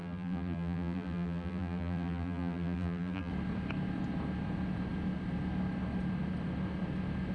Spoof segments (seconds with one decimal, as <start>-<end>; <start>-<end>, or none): 0.0-3.3